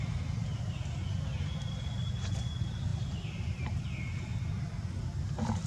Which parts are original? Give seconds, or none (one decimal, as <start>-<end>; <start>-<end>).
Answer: 0.0-5.7